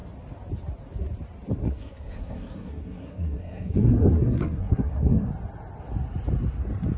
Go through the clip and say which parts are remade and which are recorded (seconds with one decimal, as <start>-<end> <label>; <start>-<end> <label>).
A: 0.0-1.6 recorded; 1.6-5.3 remade; 5.3-7.0 recorded